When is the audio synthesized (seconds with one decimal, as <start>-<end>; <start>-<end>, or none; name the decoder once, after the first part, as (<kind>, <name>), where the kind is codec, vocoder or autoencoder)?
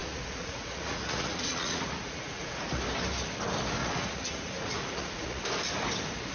0.0-2.8 (vocoder, Vocos); 3.8-5.4